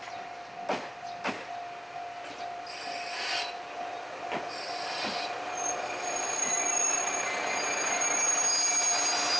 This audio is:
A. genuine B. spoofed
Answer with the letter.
A